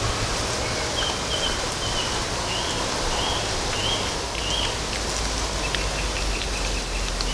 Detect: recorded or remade recorded